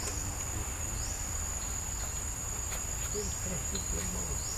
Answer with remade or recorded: recorded